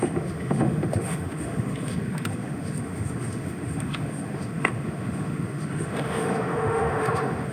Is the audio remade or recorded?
remade